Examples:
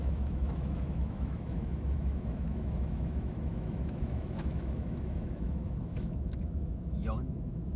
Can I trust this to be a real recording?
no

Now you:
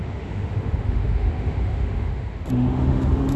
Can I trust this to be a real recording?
no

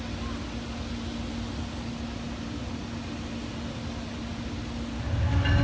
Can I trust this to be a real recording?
yes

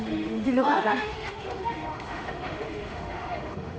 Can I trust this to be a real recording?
no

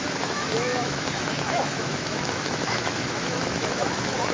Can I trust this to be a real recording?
no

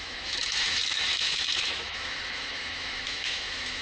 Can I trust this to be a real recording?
no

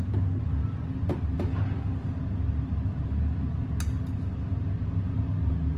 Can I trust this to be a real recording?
yes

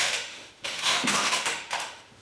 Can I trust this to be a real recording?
no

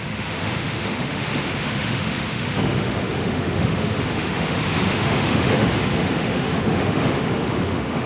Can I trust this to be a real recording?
no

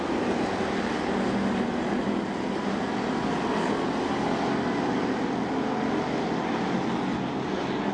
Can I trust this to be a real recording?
yes